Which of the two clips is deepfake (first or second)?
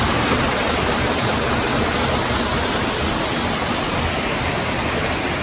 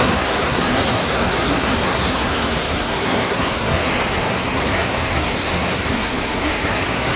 second